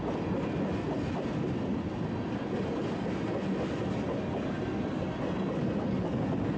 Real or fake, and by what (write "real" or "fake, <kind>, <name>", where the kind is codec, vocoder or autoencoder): real